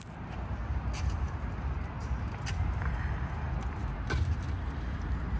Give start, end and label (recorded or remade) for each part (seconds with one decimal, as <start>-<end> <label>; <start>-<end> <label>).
0.0-5.4 recorded